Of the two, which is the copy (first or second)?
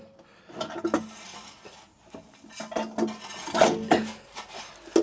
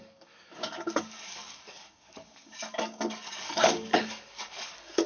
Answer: second